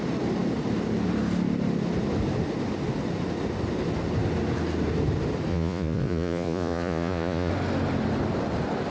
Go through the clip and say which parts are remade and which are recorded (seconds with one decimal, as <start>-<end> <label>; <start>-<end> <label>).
0.0-5.5 recorded; 5.5-7.5 remade; 7.5-8.9 recorded